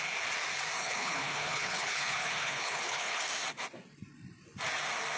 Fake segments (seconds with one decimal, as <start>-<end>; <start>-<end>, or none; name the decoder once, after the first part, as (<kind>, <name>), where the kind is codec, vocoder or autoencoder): 0.8-3.2 (codec, HILCodec)